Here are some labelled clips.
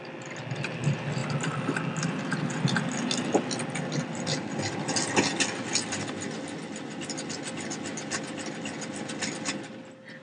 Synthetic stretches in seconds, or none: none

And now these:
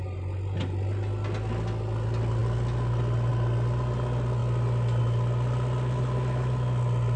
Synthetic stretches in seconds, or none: none

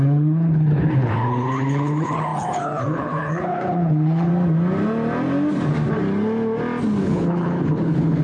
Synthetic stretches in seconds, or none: 0.0-4.3 (codec, HILCodec); 7.0-8.2